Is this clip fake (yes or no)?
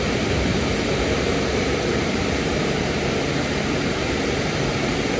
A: yes